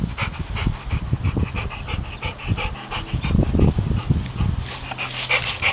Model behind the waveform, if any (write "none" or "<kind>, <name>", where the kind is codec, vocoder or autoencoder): none